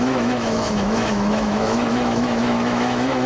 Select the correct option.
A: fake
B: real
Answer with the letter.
A